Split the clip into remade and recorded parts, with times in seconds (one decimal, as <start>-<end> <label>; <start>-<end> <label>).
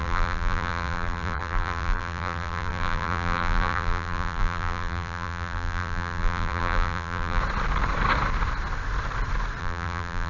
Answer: 0.0-7.4 remade; 7.4-9.6 recorded; 9.6-10.3 remade